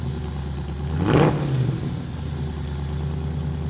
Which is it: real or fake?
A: real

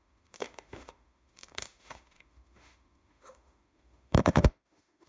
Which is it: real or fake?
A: fake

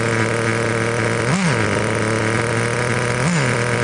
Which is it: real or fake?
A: real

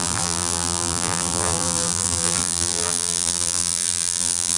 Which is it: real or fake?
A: fake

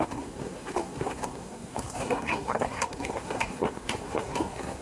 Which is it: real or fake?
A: fake